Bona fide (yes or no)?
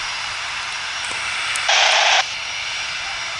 yes